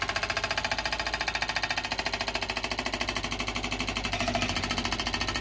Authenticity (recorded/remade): recorded